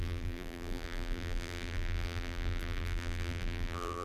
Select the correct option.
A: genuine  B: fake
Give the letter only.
B